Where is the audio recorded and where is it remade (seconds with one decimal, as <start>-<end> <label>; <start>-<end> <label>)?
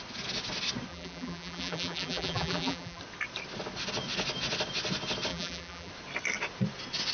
0.0-0.9 recorded; 0.9-3.0 remade; 3.0-5.3 recorded; 5.3-5.9 remade; 5.9-7.1 recorded